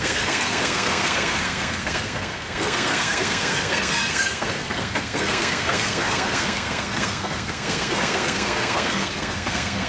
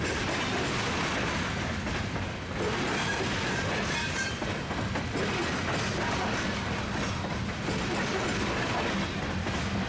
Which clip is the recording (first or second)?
second